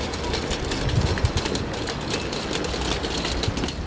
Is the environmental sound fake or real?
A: real